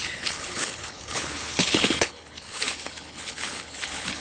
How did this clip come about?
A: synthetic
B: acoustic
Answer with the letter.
A